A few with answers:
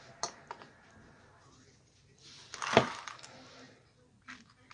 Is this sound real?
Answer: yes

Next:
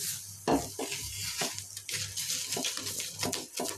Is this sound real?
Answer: yes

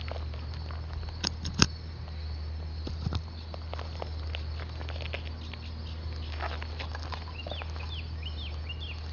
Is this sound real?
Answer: yes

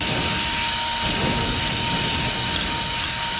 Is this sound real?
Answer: yes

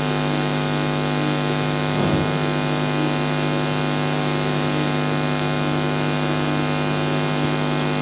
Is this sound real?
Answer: yes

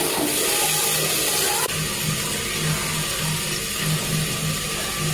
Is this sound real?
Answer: yes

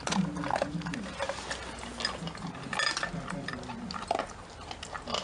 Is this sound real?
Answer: yes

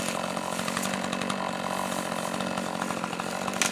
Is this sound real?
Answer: yes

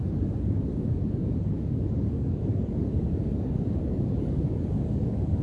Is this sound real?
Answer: no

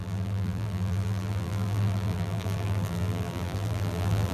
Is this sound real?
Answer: no